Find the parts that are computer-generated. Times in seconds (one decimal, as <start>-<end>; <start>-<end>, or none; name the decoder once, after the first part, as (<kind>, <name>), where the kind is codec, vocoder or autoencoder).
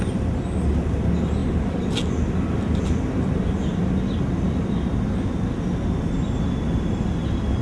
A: none